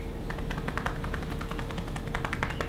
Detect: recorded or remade recorded